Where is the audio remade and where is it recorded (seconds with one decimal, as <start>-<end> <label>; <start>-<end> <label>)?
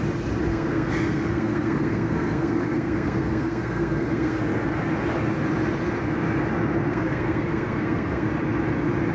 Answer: 0.0-0.5 recorded; 0.5-4.4 remade; 4.4-6.9 recorded; 6.9-8.3 remade; 8.3-9.1 recorded